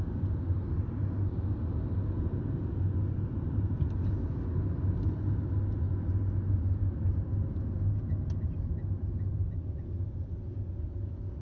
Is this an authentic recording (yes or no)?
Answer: yes